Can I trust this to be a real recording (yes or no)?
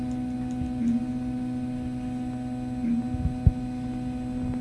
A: yes